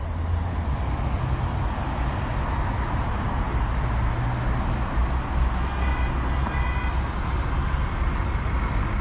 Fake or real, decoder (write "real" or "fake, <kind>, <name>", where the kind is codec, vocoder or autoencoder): real